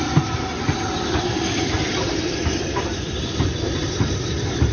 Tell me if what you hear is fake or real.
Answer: real